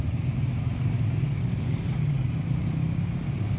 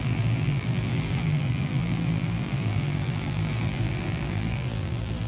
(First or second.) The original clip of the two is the first